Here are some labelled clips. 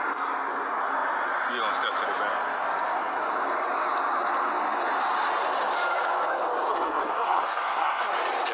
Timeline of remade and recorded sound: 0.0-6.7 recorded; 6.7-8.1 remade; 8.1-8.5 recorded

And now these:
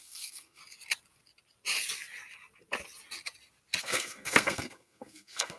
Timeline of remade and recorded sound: 0.0-0.6 remade; 0.6-3.8 recorded; 3.8-5.6 remade

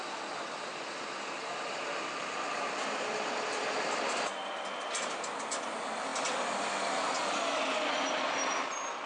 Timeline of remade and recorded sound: 0.0-9.1 recorded

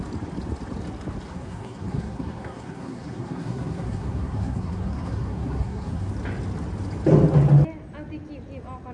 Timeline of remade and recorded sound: 0.0-1.3 recorded; 1.3-6.1 remade; 6.1-8.9 recorded

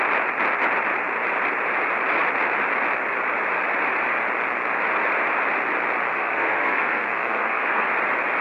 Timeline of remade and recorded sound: 0.0-6.1 recorded; 6.1-7.9 remade; 7.9-8.4 recorded